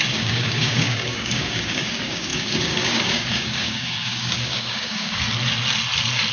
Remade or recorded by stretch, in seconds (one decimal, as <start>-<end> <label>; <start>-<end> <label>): 0.0-5.2 remade; 5.2-6.3 recorded